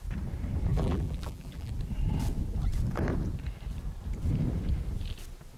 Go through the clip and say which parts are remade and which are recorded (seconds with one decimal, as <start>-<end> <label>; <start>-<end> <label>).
0.0-0.7 recorded; 0.7-1.7 remade; 1.7-5.6 recorded